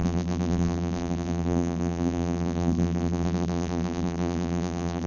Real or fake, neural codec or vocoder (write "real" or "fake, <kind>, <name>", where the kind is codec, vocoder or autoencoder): fake, vocoder, BigVGAN v2